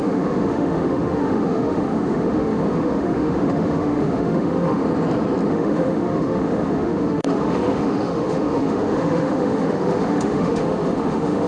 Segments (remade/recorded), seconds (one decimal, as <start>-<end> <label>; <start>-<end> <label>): 0.0-4.8 remade; 4.8-5.5 recorded; 5.5-11.5 remade

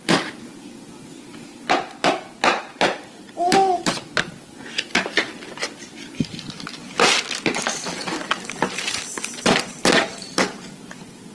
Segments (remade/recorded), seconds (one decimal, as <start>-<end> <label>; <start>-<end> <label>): 0.0-11.3 recorded

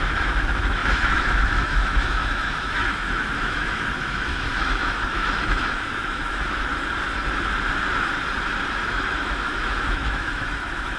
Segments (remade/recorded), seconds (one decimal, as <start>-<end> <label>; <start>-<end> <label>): 0.0-6.7 remade; 6.7-8.9 recorded; 8.9-11.0 remade

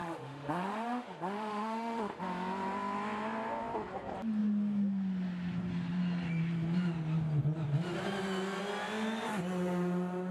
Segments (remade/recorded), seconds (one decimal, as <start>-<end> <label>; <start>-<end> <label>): 0.0-2.2 remade; 2.2-10.3 recorded

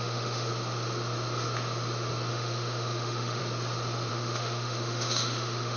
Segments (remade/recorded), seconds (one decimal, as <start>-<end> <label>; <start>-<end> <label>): 0.0-0.5 remade; 0.5-2.3 recorded; 2.3-3.4 remade; 3.4-4.1 recorded; 4.1-5.8 remade

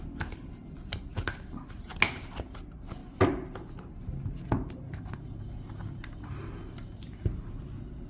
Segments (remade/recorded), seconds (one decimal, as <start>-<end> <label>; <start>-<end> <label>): 0.0-8.1 recorded

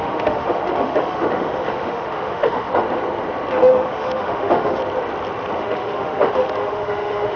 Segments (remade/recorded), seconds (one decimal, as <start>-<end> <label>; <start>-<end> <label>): 0.0-2.7 remade; 2.7-3.5 recorded; 3.5-4.8 remade; 4.8-5.6 recorded; 5.6-7.4 remade

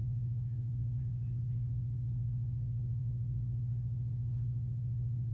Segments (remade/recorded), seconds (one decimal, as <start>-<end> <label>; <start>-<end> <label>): 0.0-1.0 remade; 1.0-5.3 recorded